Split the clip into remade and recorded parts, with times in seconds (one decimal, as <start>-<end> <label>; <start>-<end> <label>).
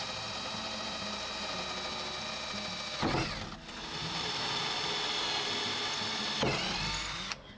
0.0-4.0 recorded; 4.0-4.8 remade; 4.8-7.6 recorded